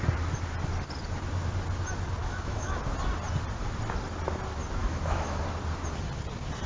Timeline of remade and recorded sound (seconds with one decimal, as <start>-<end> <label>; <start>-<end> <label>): 0.0-2.2 recorded; 2.2-2.8 remade; 2.8-4.8 recorded; 4.8-5.4 remade; 5.4-6.7 recorded